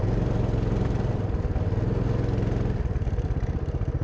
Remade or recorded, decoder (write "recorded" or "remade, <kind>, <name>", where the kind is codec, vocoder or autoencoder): recorded